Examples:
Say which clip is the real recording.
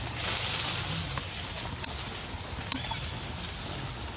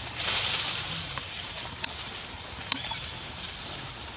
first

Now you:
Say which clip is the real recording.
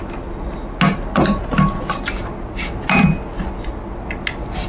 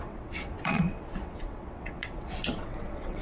first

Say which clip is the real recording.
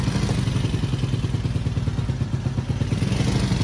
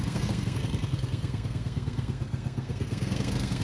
first